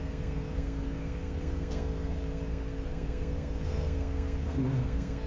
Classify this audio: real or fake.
fake